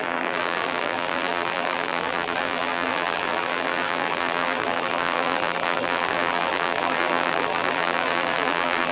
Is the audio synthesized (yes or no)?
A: yes